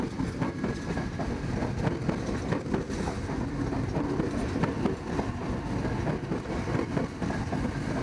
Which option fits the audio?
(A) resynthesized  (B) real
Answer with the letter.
B